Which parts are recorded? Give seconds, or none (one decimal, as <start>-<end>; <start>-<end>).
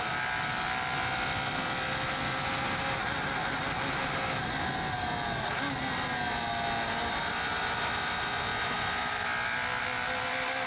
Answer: 0.0-10.7